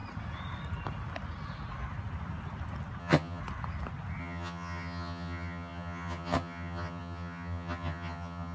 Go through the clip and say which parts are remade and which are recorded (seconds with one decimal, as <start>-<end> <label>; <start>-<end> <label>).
0.0-3.0 recorded; 3.0-3.4 remade; 3.4-4.2 recorded; 4.2-8.5 remade